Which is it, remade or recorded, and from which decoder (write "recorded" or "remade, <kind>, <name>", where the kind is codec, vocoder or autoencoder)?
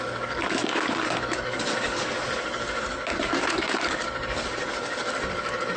remade, codec, DAC